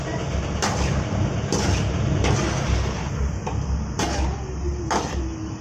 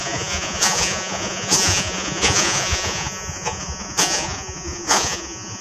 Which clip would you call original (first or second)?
first